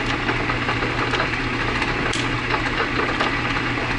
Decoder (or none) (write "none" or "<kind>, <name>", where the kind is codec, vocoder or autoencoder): none